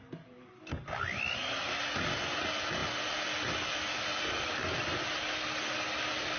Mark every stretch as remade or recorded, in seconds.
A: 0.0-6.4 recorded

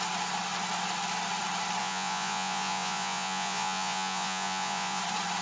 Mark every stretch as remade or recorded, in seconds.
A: 0.0-1.8 recorded; 1.8-5.0 remade; 5.0-5.4 recorded

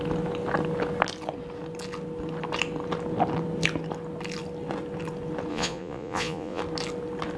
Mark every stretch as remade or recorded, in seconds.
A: 0.0-5.5 recorded; 5.5-6.6 remade; 6.6-7.4 recorded

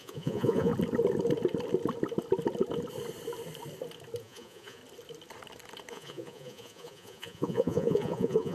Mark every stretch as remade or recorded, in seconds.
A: 0.0-0.7 remade; 0.7-4.2 recorded; 4.2-4.8 remade; 4.8-5.9 recorded; 5.9-8.5 remade

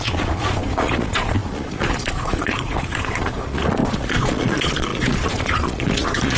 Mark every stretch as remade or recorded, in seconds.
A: 0.0-6.4 remade

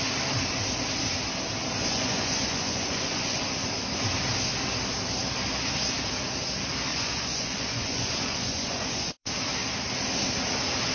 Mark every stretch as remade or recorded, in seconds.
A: 0.0-1.8 recorded; 1.8-3.4 remade; 3.4-6.9 recorded; 6.9-9.3 remade; 9.3-10.9 recorded